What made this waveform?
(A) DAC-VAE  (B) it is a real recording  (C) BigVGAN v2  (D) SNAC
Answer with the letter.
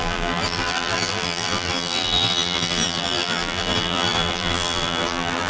C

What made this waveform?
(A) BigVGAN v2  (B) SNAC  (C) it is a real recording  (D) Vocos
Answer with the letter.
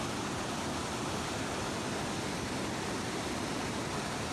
C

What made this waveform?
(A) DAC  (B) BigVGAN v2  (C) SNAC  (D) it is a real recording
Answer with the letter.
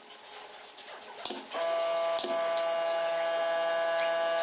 D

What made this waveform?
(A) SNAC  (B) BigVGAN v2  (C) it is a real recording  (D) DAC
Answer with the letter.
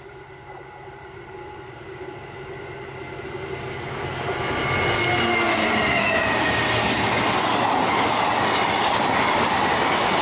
C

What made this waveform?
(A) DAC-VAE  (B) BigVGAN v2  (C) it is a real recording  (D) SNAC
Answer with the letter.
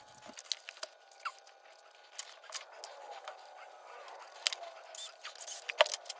C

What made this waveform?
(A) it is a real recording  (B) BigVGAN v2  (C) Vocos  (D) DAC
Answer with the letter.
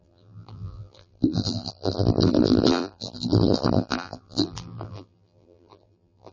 B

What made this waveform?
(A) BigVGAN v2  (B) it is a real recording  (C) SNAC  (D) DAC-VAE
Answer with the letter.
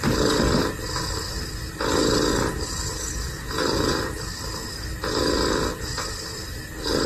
B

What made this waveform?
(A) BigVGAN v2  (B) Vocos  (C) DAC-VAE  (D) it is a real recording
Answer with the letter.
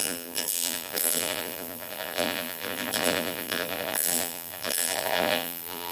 A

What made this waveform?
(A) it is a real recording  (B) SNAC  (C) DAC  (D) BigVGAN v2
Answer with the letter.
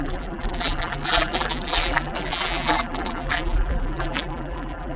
D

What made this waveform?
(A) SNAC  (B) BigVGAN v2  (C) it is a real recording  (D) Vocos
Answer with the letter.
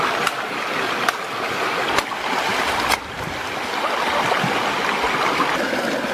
C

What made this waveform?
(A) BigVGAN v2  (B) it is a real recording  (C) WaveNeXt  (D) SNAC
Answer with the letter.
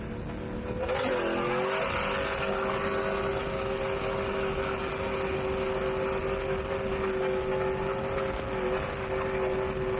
B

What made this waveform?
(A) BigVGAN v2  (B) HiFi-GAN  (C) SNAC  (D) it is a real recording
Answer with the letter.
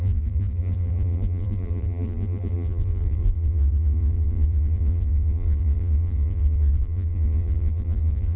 A